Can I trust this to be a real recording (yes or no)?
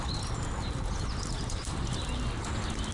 yes